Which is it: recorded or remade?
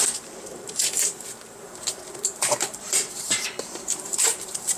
remade